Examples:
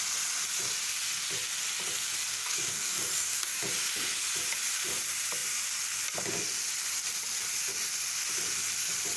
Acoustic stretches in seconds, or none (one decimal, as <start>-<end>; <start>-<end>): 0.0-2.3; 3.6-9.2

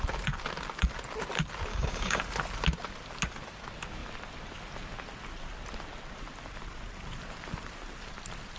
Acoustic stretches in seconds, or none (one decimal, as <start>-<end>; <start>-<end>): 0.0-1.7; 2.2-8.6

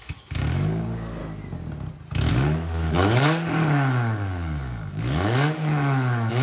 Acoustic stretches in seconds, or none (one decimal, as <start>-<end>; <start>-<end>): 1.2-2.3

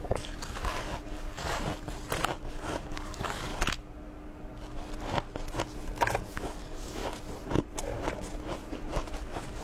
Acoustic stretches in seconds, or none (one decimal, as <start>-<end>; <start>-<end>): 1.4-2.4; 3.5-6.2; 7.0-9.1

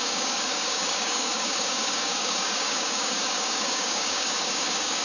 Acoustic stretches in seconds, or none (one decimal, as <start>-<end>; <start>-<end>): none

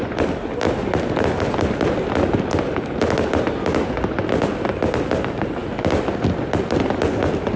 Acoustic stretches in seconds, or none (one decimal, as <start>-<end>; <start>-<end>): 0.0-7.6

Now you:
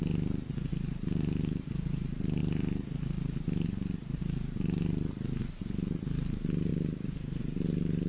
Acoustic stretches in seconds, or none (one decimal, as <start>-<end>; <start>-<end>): 0.0-8.1